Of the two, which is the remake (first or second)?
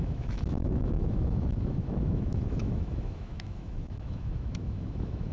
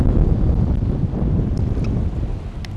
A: first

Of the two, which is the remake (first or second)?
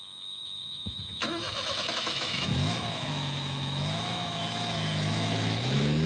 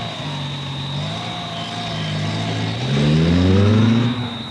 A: first